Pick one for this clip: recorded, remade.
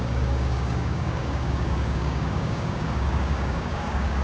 remade